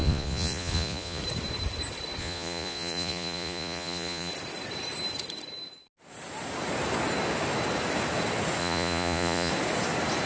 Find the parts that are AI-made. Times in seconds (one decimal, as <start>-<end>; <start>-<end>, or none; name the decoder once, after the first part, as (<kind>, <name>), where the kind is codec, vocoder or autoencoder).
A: 0.0-1.2 (vocoder, Vocos); 2.2-4.3; 8.6-9.5